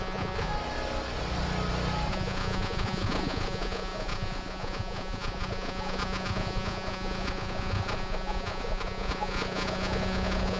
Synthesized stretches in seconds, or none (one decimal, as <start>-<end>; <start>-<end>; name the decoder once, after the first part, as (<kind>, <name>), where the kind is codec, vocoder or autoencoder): 0.0-0.5 (vocoder, Vocos); 2.1-10.6